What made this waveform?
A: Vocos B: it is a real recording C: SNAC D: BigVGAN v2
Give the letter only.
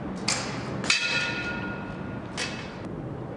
B